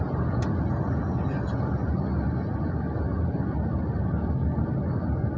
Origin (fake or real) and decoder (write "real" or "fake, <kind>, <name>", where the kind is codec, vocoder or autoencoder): real